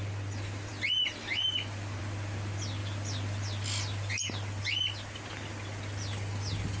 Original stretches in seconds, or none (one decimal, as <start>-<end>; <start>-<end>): 0.0-6.8